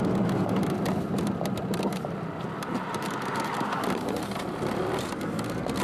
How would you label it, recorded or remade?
recorded